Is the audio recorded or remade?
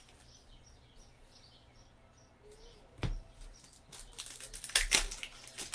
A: recorded